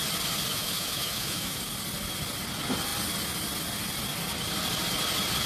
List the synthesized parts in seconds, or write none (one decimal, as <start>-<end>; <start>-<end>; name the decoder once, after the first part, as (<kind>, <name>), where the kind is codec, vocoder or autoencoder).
0.5-1.6 (autoencoder, DAC-VAE)